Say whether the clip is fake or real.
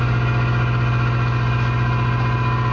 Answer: real